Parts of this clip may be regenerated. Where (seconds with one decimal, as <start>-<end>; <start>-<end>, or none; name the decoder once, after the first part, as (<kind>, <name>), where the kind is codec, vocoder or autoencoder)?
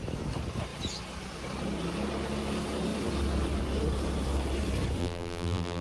5.0-5.8 (vocoder, BigVGAN v2)